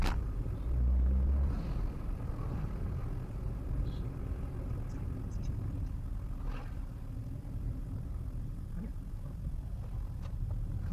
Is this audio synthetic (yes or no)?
no